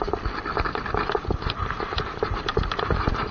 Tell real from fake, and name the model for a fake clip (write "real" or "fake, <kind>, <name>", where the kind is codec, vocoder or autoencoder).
real